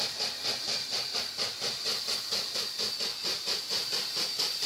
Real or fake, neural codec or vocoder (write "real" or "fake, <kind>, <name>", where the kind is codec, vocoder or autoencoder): real